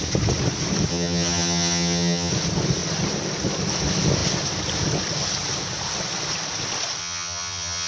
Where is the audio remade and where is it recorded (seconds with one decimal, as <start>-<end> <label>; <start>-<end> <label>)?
0.0-0.9 recorded; 0.9-2.3 remade; 2.3-7.0 recorded; 7.0-7.9 remade